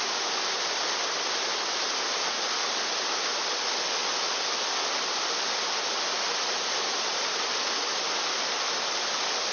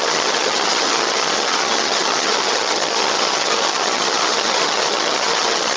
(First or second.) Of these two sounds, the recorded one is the first